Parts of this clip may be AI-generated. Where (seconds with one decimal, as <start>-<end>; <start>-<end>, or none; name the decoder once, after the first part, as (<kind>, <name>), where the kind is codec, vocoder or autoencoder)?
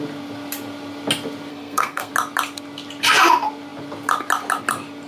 1.5-2.1 (codec, SNAC)